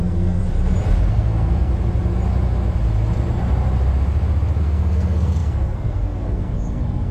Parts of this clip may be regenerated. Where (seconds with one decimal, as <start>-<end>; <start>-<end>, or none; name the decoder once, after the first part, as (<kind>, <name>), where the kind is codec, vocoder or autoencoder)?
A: 0.0-0.4 (codec, SNAC); 1.1-1.7; 4.6-7.1